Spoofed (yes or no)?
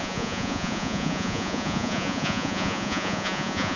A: yes